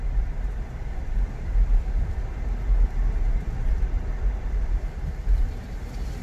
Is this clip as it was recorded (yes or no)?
no